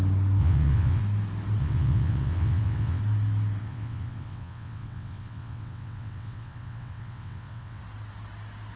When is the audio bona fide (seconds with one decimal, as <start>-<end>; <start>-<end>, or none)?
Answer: 0.0-0.4; 1.0-1.6; 3.0-3.6; 7.8-8.8